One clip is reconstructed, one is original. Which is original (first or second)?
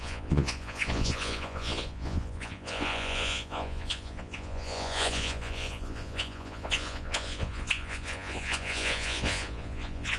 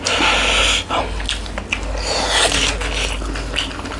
second